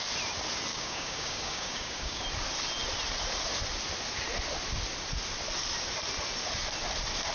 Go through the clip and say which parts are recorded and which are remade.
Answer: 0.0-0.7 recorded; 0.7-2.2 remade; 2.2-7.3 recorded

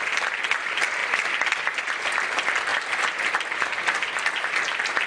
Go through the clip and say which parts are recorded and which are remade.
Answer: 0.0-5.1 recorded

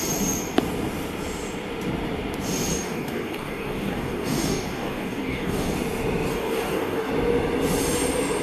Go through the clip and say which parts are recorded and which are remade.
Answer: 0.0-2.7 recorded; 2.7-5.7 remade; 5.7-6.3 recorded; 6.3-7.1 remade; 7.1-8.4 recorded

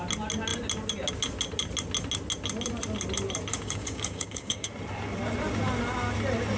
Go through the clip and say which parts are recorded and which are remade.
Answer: 0.0-3.5 recorded; 3.5-4.7 remade; 4.7-6.6 recorded

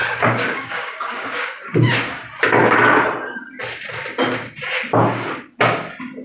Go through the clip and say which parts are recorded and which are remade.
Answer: 0.0-1.9 remade; 1.9-6.2 recorded

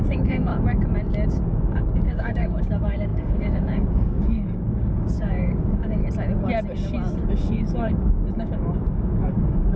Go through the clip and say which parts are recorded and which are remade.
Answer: 0.0-0.5 remade; 0.5-1.3 recorded; 1.3-6.0 remade; 6.0-7.3 recorded; 7.3-9.8 remade

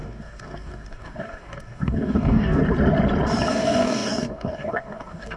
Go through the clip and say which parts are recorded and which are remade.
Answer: 0.0-2.6 remade; 2.6-3.5 recorded; 3.5-5.4 remade